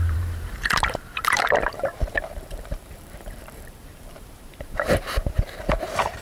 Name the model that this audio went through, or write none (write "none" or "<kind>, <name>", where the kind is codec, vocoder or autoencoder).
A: vocoder, BigVGAN v2